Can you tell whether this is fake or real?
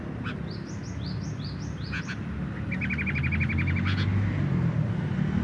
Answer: real